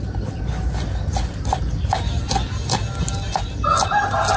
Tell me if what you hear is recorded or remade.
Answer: recorded